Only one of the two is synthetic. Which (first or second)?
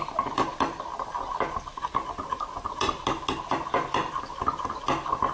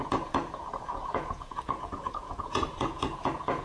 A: second